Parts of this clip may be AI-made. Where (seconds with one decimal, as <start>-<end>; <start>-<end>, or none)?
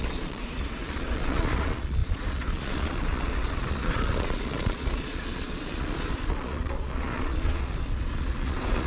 0.0-8.9